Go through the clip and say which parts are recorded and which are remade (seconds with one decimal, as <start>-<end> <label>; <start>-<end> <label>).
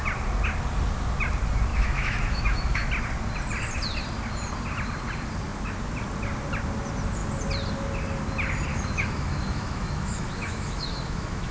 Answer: 0.0-1.7 recorded; 1.7-2.9 remade; 2.9-8.7 recorded; 8.7-11.5 remade